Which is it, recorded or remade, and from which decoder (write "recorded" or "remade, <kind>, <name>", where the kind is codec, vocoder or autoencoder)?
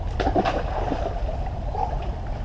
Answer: recorded